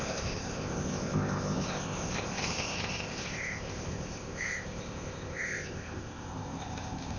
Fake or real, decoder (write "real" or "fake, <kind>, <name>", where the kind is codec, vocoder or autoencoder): fake, codec, ZipCodec